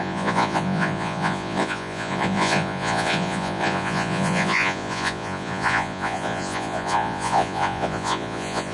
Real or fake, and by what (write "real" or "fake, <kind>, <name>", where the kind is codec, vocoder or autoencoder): fake, vocoder, Vocos